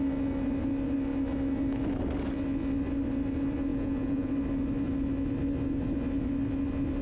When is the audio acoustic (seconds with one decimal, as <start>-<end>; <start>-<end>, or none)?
0.0-3.7; 4.3-7.0